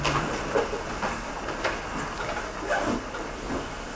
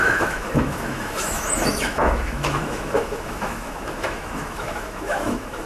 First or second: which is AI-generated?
second